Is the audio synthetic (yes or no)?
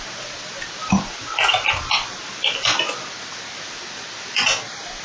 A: no